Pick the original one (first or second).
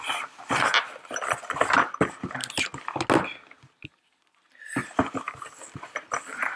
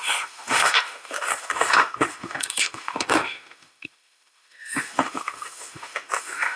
first